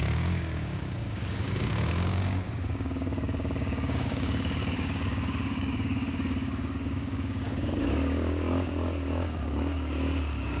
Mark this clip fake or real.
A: fake